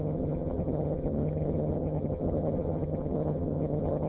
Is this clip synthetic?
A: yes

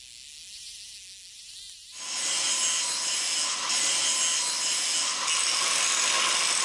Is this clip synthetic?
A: no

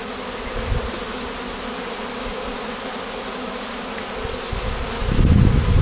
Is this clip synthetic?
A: no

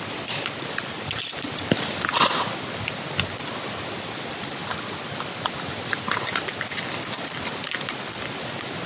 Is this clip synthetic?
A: no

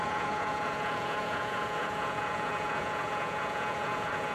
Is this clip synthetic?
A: yes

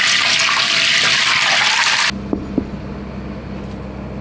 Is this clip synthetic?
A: no